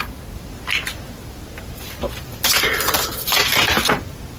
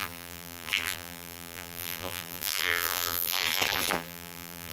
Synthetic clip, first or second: second